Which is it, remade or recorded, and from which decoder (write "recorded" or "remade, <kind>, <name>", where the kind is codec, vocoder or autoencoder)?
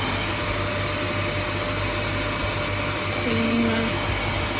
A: recorded